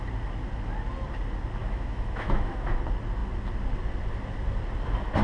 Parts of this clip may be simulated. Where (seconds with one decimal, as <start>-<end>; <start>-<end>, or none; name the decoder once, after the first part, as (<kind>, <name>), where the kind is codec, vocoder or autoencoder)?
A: 1.6-2.8 (autoencoder, DAC-VAE)